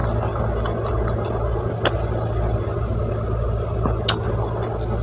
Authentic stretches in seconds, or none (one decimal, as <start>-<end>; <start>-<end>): 0.0-5.0